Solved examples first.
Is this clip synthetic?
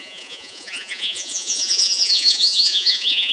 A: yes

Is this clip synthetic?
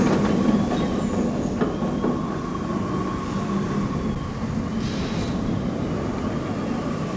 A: no